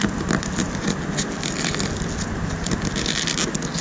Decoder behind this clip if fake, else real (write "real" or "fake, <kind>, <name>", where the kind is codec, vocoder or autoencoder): real